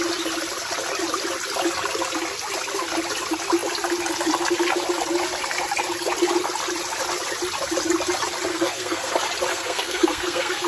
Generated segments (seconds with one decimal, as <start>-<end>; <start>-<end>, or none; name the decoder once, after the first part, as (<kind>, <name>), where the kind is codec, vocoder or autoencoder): 8.5-9.1 (codec, SNAC); 9.5-10.7